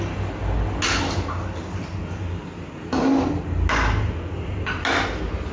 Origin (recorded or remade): recorded